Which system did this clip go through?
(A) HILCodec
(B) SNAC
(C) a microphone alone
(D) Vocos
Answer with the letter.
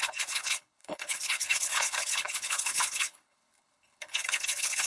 A